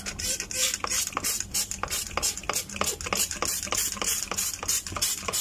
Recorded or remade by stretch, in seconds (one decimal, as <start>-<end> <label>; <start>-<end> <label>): 0.0-5.4 recorded